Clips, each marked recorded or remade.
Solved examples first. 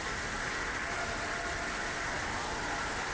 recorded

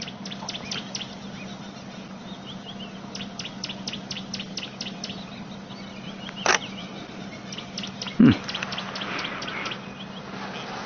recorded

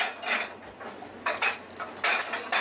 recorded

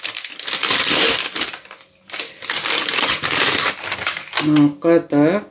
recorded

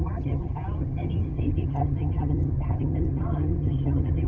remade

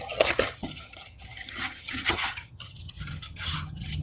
remade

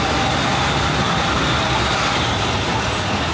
recorded